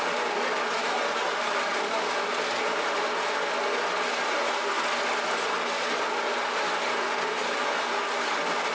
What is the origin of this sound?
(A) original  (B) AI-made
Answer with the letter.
A